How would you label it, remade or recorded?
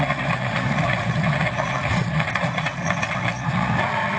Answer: remade